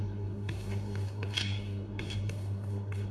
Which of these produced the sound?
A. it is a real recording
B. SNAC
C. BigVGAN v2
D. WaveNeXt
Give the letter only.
B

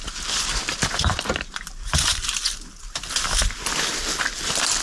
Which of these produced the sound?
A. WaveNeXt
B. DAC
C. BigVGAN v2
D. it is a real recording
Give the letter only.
D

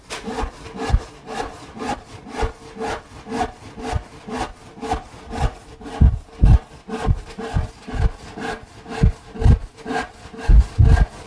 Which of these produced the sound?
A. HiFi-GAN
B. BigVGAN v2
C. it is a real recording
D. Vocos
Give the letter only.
C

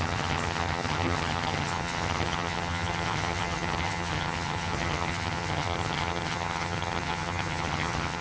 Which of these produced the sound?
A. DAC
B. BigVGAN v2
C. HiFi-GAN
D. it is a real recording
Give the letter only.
C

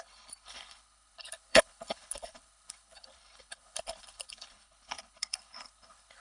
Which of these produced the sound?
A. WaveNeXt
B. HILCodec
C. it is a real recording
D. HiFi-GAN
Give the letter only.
B